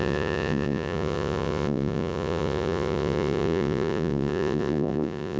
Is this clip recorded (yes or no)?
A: no